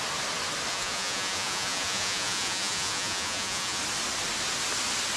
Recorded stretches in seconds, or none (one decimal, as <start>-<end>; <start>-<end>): 0.0-0.7; 3.8-5.2